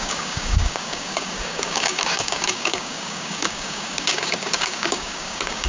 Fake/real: fake